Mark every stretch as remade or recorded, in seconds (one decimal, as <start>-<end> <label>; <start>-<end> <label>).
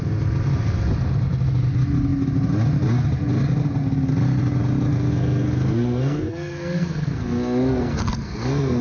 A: 0.0-4.9 recorded; 4.9-8.8 remade